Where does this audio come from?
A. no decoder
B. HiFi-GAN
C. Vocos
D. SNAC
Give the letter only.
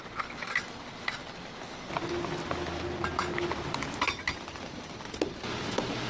A